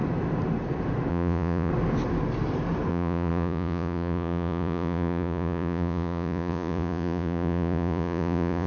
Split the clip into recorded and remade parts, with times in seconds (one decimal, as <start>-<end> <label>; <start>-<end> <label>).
0.0-1.1 recorded; 1.1-1.7 remade; 1.7-2.9 recorded; 2.9-8.7 remade